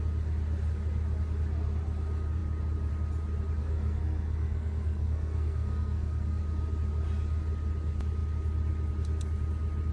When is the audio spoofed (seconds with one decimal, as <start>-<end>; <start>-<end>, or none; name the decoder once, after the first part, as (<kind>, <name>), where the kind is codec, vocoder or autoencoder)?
3.6-6.4 (codec, SNAC)